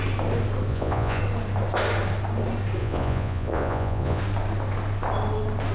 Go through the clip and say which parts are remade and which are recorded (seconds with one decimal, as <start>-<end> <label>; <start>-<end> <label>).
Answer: 0.0-0.7 recorded; 0.7-1.2 remade; 1.2-2.8 recorded; 2.8-4.2 remade; 4.2-5.7 recorded